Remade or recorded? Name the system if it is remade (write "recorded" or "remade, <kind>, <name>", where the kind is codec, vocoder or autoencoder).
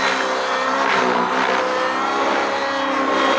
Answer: recorded